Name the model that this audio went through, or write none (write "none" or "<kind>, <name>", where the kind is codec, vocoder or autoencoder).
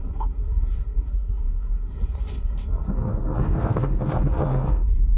codec, SNAC